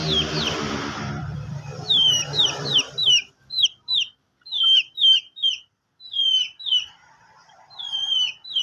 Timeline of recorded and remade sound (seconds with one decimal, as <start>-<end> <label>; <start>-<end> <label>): 0.0-0.5 recorded; 0.5-8.6 remade